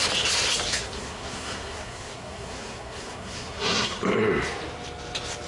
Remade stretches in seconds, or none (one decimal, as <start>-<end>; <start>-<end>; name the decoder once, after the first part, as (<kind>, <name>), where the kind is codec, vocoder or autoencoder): 0.7-4.0 (codec, SNAC)